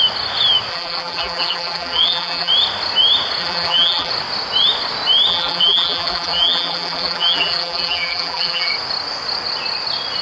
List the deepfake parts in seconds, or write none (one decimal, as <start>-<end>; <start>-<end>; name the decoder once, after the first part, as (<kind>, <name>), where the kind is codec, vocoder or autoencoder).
0.7-2.5 (vocoder, BigVGAN v2); 3.4-4.1; 5.3-8.7